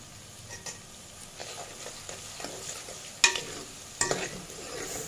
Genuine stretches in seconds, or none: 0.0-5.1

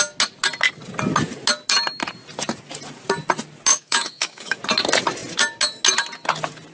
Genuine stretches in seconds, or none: 0.0-3.7; 4.6-6.7

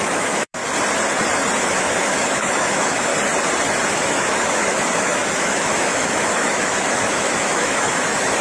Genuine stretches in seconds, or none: 0.6-1.6; 3.1-3.9

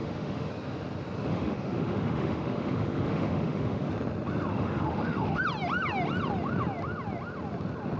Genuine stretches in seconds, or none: 0.5-1.3; 3.9-4.5; 5.4-8.0